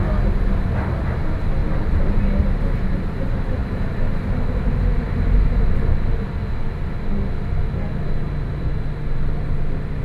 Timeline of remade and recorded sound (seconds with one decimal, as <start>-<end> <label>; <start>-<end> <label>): 0.0-10.0 recorded